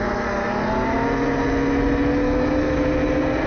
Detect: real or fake real